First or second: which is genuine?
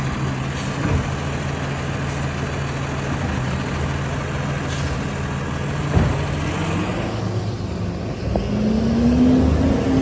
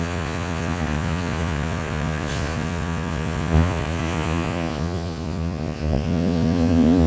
first